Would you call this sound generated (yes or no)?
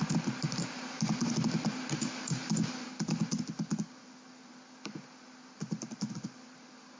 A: no